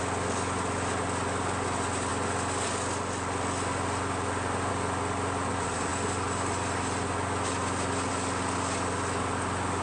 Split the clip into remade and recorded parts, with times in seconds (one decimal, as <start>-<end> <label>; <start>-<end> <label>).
0.0-9.8 recorded